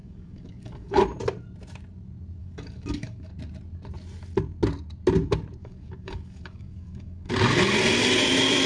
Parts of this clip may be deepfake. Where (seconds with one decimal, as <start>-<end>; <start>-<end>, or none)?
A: 0.0-1.0; 2.4-3.3; 5.6-7.3